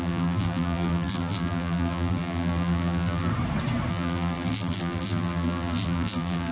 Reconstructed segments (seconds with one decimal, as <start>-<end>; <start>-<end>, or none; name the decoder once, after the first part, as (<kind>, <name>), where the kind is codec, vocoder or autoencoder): 0.0-3.3 (vocoder, BigVGAN v2); 3.9-6.5